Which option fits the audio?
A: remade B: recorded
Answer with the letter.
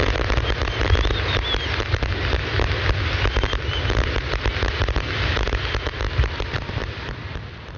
B